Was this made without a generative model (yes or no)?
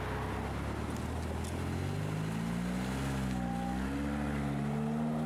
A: yes